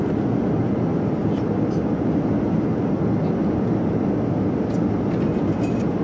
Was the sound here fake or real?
real